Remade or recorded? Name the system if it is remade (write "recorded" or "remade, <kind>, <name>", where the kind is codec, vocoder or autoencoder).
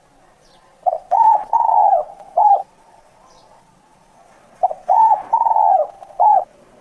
remade, vocoder, Vocos